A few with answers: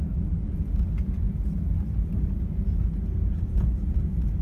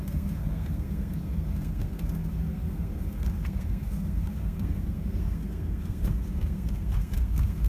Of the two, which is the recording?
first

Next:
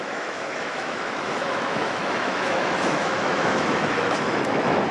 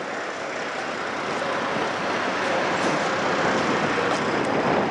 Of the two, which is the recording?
second